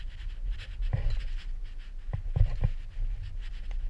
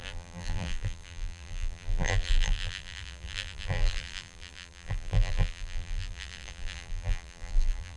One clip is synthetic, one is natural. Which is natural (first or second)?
first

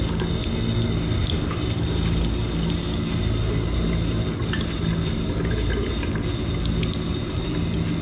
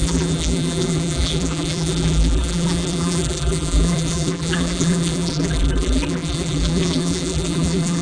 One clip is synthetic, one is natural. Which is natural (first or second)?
first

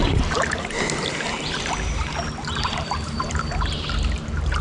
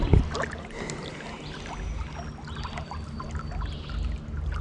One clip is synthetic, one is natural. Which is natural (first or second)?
second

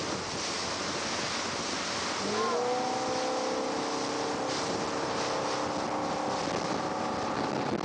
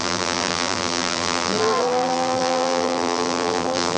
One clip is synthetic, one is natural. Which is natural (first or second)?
first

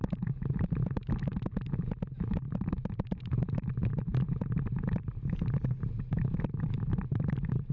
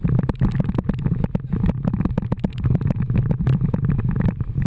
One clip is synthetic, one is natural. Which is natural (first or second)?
second